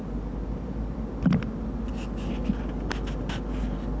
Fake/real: real